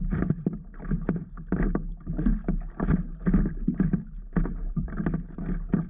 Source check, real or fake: real